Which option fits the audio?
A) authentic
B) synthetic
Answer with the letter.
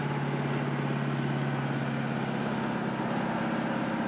A